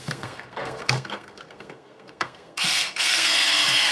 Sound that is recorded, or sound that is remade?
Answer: remade